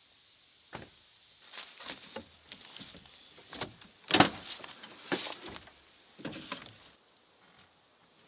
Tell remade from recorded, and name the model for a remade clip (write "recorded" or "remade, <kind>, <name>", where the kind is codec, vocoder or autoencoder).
recorded